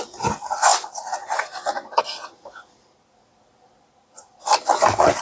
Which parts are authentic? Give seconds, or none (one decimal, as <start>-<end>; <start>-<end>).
0.0-5.2